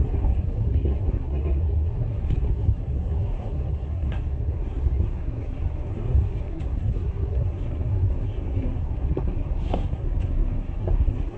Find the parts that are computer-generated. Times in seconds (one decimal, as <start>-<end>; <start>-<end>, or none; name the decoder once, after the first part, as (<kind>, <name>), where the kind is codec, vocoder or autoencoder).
0.0-11.4 (codec, SNAC)